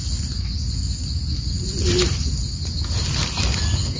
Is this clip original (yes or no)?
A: yes